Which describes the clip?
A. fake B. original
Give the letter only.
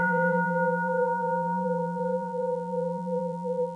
A